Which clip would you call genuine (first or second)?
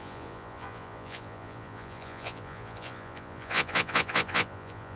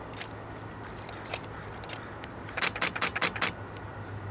second